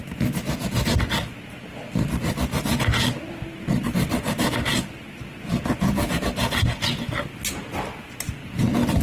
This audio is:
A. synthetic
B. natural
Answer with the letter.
B